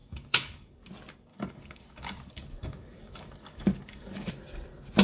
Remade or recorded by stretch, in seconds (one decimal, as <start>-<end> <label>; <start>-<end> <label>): 0.0-0.9 remade; 0.9-1.3 recorded; 1.3-4.3 remade; 4.3-5.0 recorded